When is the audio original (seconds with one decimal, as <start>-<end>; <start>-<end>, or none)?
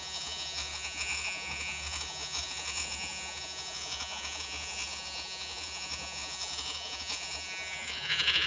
none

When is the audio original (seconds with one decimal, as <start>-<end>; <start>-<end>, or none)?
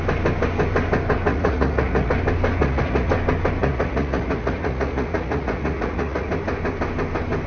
0.0-1.3; 2.1-2.6; 3.1-3.6; 6.3-7.5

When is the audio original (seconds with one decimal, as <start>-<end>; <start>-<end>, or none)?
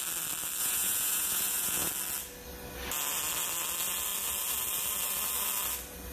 0.0-0.6; 1.9-6.1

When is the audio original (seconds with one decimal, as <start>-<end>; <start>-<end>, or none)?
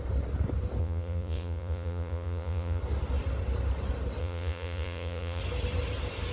0.0-0.8; 2.8-4.2; 5.4-6.3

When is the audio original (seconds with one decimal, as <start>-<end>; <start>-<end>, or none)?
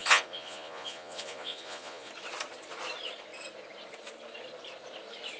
2.1-5.4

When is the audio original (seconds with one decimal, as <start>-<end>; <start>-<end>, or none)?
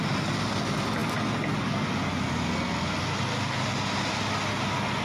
0.0-5.0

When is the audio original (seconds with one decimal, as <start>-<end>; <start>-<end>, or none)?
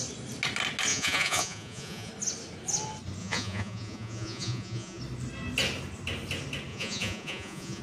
0.0-0.9; 2.1-3.2; 5.0-6.7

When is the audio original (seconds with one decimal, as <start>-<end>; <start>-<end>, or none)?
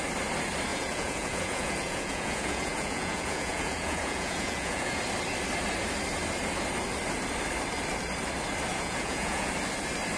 0.0-0.7; 5.0-8.7; 9.5-10.2